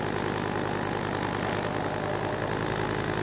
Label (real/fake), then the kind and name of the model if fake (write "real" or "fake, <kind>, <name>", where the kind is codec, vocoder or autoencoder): real